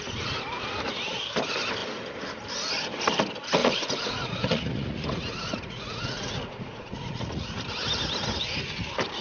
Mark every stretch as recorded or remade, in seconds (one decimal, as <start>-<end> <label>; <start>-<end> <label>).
0.0-3.6 recorded; 3.6-7.6 remade; 7.6-9.2 recorded